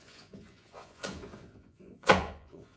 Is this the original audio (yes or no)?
no